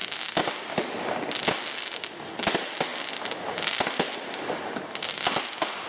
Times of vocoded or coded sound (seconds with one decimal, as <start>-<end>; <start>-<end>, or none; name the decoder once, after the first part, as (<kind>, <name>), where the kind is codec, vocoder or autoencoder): none